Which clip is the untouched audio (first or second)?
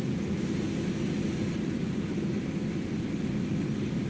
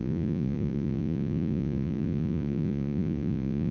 first